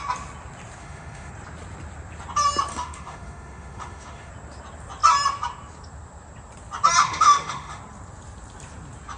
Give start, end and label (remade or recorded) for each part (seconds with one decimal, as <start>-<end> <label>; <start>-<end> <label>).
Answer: 0.0-0.8 recorded; 0.8-1.3 remade; 1.3-2.7 recorded; 2.7-4.3 remade; 4.3-7.0 recorded; 7.0-7.8 remade; 7.8-9.2 recorded